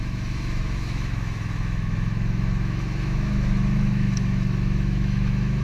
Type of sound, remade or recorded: remade